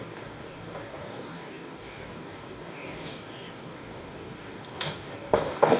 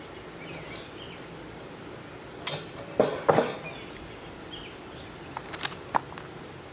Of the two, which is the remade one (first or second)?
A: first